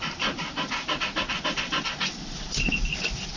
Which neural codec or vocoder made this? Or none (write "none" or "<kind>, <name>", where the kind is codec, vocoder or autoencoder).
none